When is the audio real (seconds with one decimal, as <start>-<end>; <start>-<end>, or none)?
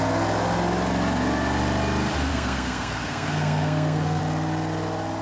0.0-2.3; 4.2-5.2